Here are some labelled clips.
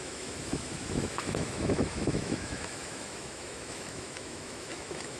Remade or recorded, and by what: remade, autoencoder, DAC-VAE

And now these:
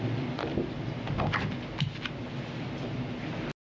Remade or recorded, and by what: recorded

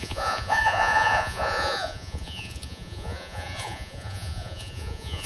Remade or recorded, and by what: remade, vocoder, Vocos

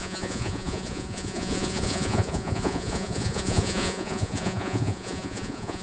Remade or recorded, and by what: remade, vocoder, Vocos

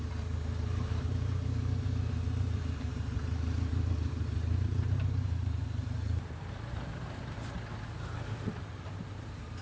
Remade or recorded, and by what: remade, vocoder, BigVGAN v2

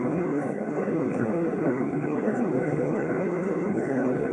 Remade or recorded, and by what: remade, codec, SNAC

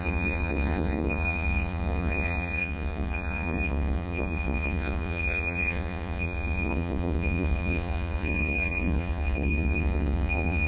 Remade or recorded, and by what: remade, vocoder, Vocos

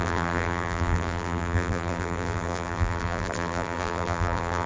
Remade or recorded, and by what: remade, vocoder, BigVGAN v2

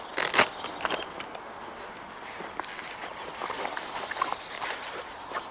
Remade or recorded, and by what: recorded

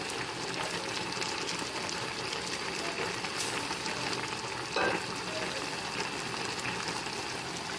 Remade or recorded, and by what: recorded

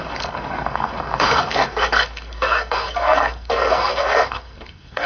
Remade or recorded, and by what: remade, codec, SNAC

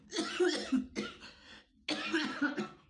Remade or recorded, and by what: recorded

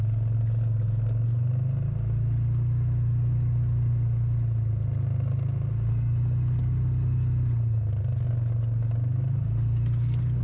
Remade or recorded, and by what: recorded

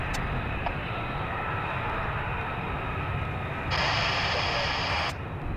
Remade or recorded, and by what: recorded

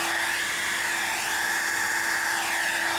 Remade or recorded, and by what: recorded